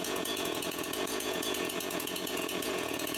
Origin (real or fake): fake